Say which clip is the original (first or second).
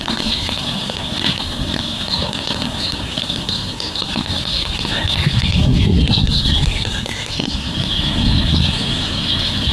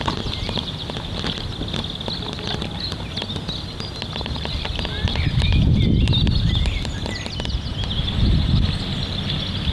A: second